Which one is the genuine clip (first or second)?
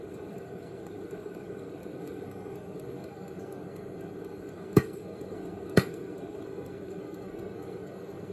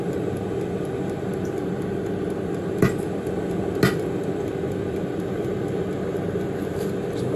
second